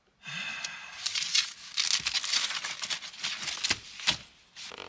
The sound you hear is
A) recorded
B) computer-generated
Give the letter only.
A